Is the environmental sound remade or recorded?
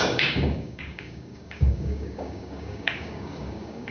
remade